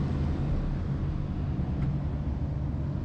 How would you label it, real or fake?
real